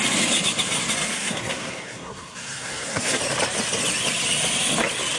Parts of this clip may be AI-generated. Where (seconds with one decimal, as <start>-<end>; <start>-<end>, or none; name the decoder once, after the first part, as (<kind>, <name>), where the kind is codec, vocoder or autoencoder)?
1.1-3.2 (codec, SNAC)